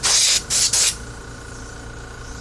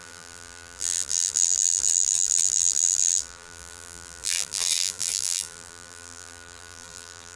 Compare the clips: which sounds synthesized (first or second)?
second